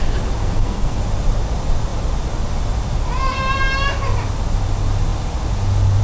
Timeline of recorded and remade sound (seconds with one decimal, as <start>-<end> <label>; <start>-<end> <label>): 0.0-0.4 recorded; 0.4-1.0 remade; 1.0-6.0 recorded